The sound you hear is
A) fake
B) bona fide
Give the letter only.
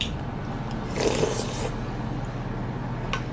B